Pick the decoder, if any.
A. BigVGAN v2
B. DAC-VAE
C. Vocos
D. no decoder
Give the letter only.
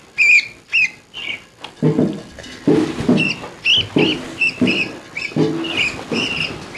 D